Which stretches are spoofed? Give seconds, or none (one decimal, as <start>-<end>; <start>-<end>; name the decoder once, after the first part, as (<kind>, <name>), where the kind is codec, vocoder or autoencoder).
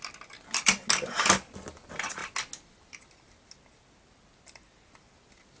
none